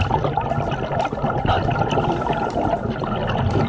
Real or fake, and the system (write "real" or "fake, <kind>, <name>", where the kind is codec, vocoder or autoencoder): real